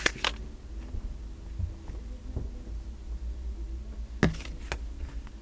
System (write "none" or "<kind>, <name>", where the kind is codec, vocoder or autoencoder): none